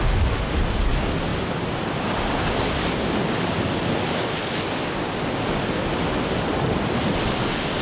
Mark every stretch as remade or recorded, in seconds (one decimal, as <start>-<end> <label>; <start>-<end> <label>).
0.0-7.8 recorded